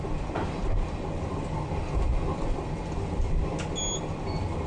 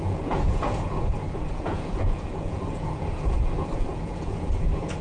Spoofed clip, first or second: second